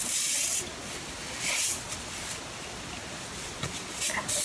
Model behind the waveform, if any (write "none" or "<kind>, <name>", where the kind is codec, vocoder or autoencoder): none